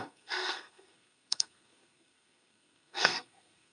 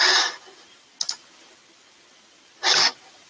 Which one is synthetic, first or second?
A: first